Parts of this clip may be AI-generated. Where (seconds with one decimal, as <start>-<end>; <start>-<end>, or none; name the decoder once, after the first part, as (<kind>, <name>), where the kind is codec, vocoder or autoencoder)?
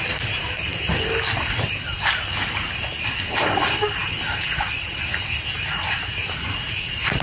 none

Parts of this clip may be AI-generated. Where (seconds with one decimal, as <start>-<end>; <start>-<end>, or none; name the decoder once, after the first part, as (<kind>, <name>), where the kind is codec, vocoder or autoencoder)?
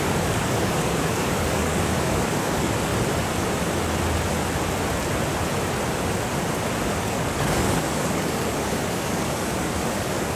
0.0-2.9 (codec, DAC); 7.0-10.4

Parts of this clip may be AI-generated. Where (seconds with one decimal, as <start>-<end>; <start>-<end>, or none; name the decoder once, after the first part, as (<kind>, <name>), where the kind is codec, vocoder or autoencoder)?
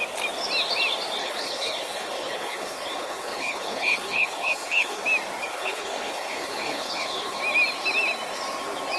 1.2-5.0 (codec, HILCodec); 5.5-7.4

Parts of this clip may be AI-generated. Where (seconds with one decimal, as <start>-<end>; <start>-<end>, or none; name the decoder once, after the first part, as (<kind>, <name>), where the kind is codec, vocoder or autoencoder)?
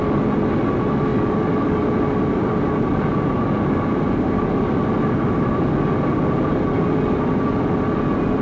none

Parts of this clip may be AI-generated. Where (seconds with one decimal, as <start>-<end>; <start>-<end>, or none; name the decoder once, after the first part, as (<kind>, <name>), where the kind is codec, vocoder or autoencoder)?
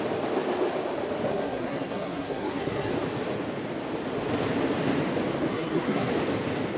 1.3-2.9 (codec, SNAC); 5.5-6.1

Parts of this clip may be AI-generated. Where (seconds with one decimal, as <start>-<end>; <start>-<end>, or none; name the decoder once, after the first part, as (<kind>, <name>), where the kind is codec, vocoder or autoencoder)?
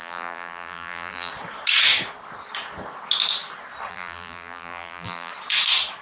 0.0-1.3 (vocoder, BigVGAN v2); 3.9-5.3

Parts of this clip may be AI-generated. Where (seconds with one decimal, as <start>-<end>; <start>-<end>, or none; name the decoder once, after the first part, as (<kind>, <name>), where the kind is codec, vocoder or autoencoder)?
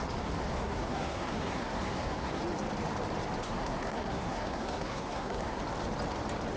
0.5-2.4 (codec, SNAC); 3.4-5.6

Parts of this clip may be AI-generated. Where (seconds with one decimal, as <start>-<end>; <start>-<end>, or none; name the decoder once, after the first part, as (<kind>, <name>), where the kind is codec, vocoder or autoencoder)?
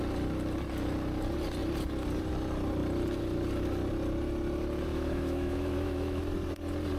4.9-6.2 (autoencoder, DAC-VAE)